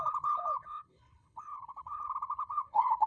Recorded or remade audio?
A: remade